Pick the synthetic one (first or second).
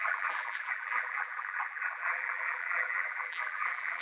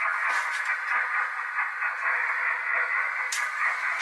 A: first